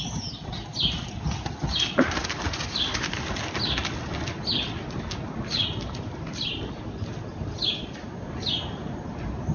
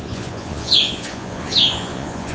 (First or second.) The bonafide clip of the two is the first